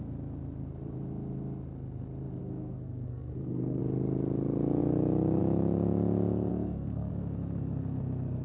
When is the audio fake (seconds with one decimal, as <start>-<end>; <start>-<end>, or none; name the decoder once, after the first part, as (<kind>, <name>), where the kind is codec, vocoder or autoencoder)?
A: 2.4-3.8 (codec, SNAC); 6.5-7.1